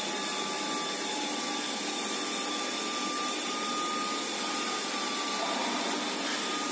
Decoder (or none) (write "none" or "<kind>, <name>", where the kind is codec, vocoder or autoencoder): none